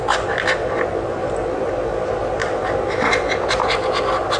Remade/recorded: recorded